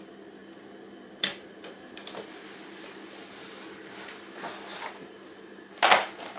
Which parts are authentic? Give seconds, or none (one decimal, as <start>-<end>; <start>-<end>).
0.0-6.4